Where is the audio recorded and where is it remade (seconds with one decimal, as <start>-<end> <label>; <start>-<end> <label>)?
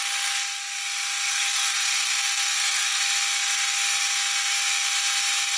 0.0-1.3 recorded; 1.3-3.0 remade; 3.0-5.6 recorded